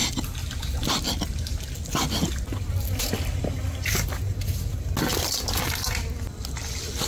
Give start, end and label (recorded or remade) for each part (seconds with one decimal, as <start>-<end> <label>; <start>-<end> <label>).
0.0-7.1 recorded